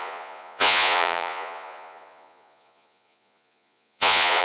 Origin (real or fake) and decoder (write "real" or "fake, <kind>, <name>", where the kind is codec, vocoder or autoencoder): fake, vocoder, Vocos